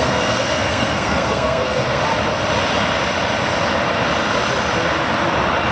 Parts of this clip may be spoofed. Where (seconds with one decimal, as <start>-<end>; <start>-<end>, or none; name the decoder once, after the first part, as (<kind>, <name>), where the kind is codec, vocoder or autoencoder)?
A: 0.0-2.0 (codec, SNAC)

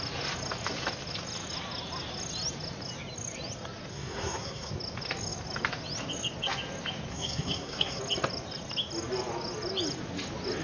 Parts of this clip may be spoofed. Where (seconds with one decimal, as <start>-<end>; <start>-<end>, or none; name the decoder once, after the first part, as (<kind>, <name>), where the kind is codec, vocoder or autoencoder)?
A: 3.9-4.7 (codec, SNAC); 7.1-8.0

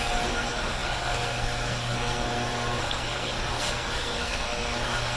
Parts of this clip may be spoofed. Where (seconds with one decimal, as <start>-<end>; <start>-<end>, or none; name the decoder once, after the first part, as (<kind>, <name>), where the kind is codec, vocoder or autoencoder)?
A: 0.0-5.2 (codec, SNAC)

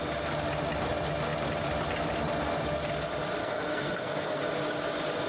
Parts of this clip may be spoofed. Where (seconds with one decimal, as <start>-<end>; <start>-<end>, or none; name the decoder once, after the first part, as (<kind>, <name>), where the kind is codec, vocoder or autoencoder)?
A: 3.4-4.4 (codec, SNAC)

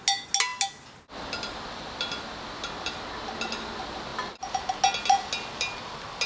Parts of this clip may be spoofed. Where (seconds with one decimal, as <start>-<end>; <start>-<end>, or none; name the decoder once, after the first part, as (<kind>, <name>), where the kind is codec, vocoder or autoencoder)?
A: none

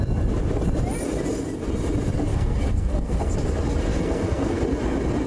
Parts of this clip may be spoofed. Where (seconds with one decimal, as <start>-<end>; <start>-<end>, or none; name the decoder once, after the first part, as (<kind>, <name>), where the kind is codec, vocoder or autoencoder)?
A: 2.3-3.3 (codec, SNAC); 3.9-4.6

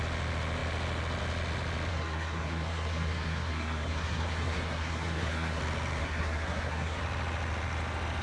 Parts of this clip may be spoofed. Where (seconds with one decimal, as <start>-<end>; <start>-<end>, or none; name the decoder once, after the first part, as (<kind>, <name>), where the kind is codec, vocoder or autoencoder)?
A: 1.9-5.6 (codec, SNAC); 6.0-7.0